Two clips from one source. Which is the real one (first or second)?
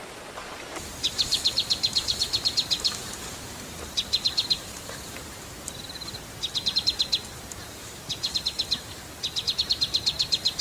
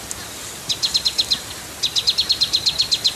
second